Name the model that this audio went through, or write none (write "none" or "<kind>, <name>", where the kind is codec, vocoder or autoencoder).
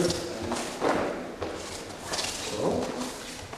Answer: none